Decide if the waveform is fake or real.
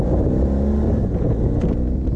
real